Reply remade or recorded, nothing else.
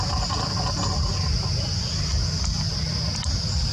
recorded